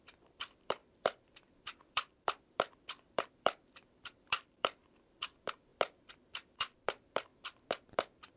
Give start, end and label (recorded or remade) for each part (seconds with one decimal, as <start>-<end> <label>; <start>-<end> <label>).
0.0-5.7 remade; 5.7-6.3 recorded; 6.3-7.3 remade; 7.3-8.4 recorded